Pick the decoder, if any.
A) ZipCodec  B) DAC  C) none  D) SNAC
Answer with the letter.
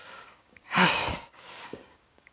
B